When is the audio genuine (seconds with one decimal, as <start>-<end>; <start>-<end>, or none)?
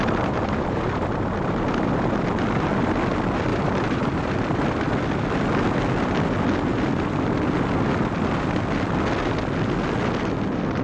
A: 0.0-3.5; 4.3-10.8